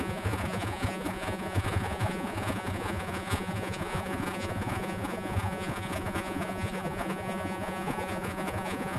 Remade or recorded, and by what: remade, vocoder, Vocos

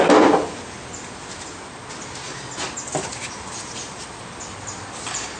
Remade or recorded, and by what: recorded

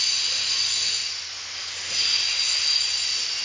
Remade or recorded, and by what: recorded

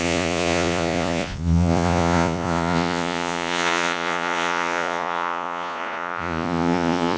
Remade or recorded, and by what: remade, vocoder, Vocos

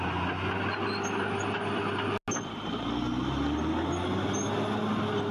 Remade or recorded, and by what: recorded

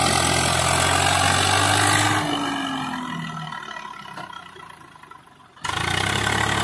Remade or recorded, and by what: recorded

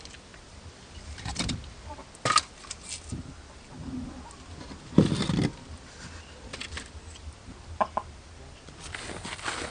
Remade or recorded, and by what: recorded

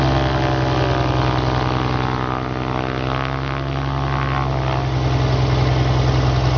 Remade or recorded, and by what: recorded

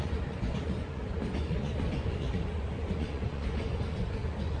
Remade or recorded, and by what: remade, vocoder, Vocos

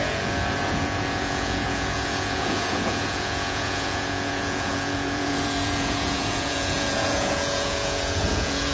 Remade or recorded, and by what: remade, vocoder, Vocos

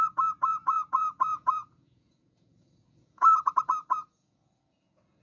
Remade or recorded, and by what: remade, vocoder, Vocos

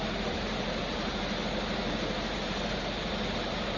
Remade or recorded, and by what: recorded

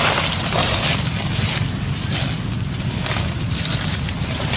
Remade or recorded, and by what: recorded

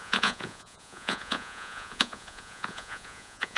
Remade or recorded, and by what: remade, vocoder, Vocos